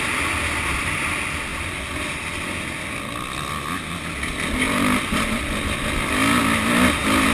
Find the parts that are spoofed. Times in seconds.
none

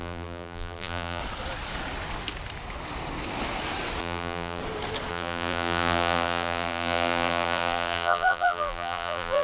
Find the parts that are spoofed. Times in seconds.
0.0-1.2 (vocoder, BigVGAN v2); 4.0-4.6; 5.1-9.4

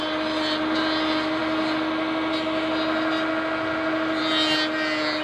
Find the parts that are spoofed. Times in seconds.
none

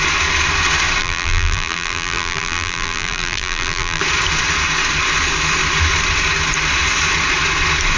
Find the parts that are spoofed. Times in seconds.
1.0-4.0 (vocoder, BigVGAN v2)